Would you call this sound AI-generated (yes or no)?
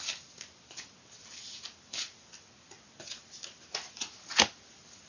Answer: no